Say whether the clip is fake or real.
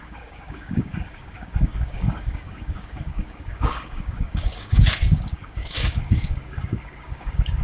fake